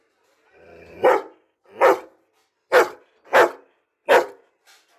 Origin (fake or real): fake